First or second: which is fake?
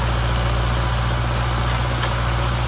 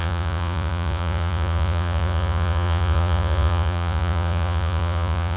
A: second